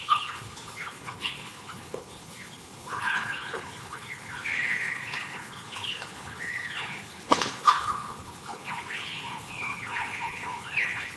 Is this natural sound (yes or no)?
no